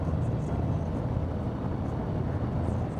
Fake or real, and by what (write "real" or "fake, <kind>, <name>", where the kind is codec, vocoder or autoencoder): real